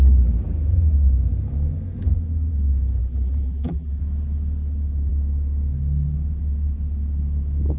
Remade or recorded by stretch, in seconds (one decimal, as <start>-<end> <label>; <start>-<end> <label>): 0.0-3.0 recorded; 3.0-4.0 remade; 4.0-7.8 recorded